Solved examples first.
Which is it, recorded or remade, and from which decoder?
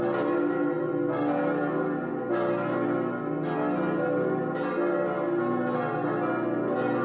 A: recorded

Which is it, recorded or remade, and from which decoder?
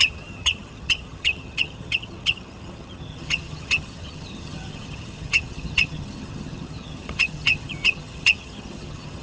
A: remade, vocoder, HiFi-GAN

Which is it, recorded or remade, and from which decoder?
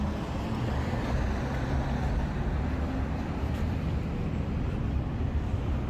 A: recorded